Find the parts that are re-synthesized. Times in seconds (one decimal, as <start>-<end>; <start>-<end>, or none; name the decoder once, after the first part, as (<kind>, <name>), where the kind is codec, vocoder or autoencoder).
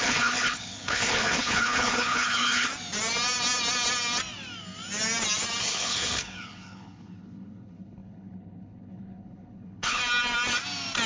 0.0-2.7 (codec, HILCodec); 5.6-10.0